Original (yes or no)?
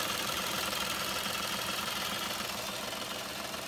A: no